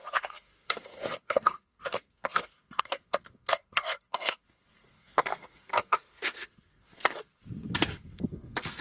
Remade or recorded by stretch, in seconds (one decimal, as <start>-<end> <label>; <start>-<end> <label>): 0.0-8.8 remade